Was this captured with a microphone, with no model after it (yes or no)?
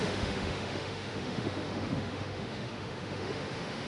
no